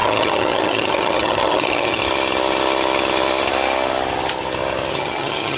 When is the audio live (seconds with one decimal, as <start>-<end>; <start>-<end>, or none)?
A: 2.0-4.9